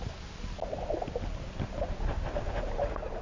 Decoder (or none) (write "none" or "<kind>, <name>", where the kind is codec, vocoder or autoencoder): none